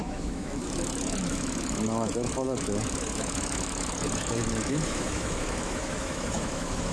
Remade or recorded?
remade